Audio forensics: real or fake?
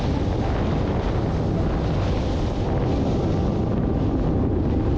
real